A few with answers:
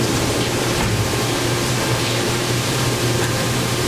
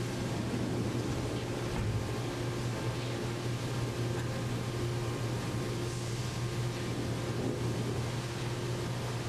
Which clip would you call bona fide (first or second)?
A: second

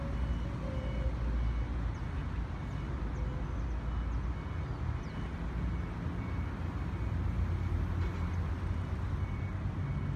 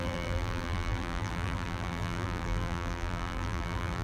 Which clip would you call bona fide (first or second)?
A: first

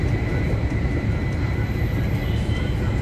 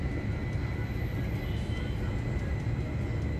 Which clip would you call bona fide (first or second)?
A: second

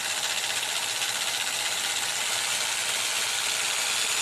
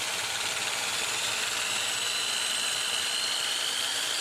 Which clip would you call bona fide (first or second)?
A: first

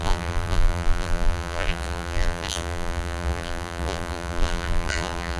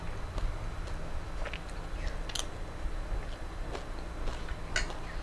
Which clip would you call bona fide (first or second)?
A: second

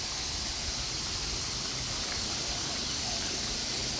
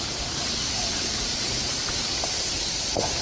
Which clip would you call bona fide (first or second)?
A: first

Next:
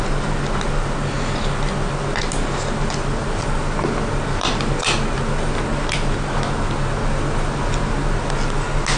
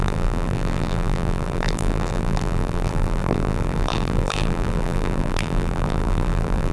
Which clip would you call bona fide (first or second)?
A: first